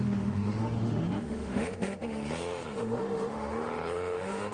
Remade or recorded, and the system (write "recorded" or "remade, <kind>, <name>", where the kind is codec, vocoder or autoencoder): remade, autoencoder, DAC-VAE